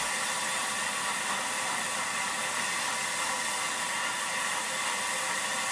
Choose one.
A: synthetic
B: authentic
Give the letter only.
B